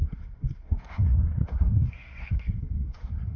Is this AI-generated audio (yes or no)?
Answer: yes